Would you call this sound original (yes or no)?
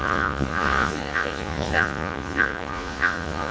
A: no